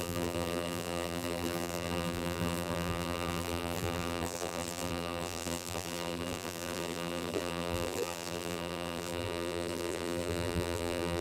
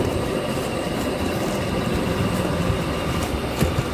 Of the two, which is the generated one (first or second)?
first